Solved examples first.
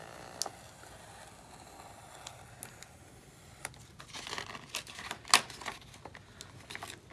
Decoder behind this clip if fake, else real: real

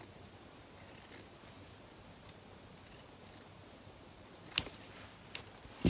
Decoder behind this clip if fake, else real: real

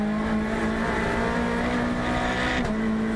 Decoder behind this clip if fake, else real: real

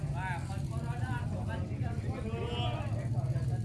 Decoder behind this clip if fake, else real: real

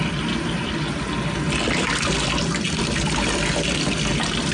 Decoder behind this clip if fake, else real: real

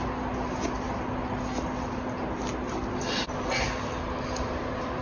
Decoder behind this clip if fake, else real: real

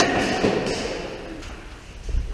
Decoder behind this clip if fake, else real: real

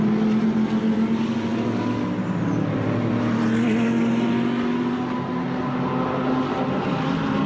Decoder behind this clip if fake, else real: real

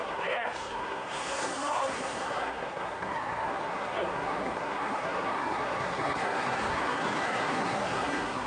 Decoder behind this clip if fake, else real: fake, codec, SNAC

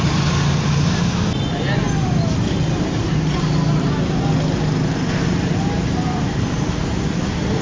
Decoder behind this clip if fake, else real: real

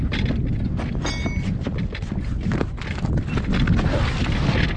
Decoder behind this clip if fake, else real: real